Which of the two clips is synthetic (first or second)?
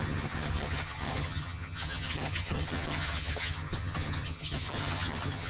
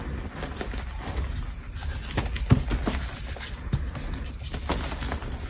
first